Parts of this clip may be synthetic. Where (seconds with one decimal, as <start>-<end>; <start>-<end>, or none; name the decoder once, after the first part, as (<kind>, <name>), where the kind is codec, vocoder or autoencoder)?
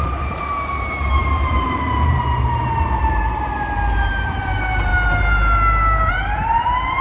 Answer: 0.0-4.9 (vocoder, BigVGAN v2); 6.1-7.0